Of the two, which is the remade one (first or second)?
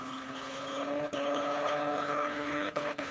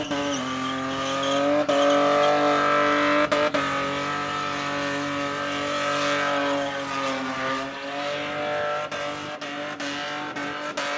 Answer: first